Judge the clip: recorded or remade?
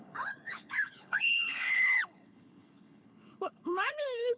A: remade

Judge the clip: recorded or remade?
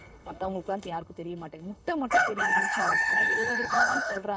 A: remade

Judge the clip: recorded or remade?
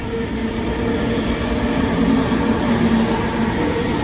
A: recorded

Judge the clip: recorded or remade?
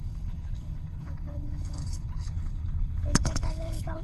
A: remade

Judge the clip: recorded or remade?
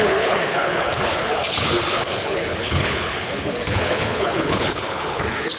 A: remade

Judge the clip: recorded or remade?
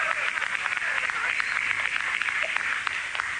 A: recorded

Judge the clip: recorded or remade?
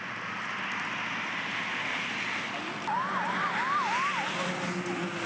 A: recorded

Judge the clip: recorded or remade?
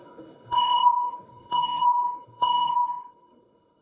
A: remade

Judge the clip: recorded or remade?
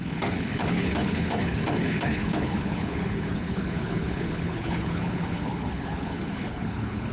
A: remade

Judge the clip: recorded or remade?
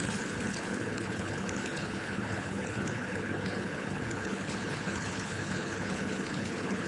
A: remade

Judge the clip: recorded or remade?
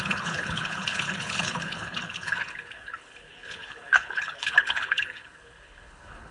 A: remade